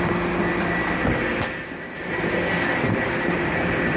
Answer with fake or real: real